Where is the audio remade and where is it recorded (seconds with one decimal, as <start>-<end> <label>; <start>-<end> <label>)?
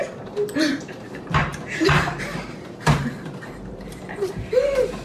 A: 0.0-5.0 remade